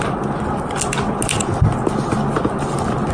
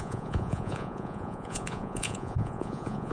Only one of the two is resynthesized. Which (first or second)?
second